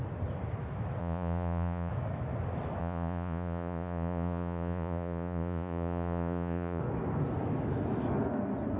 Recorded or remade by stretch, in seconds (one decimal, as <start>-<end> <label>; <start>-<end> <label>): 0.0-1.0 recorded; 1.0-1.9 remade; 1.9-2.8 recorded; 2.8-6.8 remade; 6.8-8.8 recorded